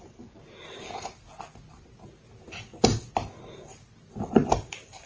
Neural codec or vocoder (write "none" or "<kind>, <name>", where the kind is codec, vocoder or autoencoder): none